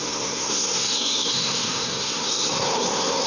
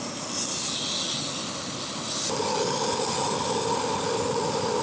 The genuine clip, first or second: second